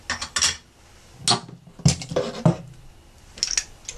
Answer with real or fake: real